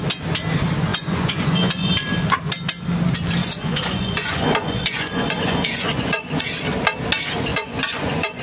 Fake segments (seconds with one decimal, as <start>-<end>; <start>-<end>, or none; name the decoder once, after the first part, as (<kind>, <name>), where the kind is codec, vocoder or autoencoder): 0.9-1.9 (vocoder, Vocos); 3.4-6.4; 7.5-8.4